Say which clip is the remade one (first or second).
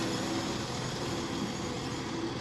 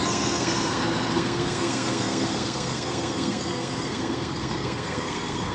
second